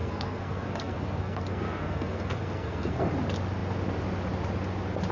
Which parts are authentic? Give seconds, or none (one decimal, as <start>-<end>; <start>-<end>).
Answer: 3.1-5.1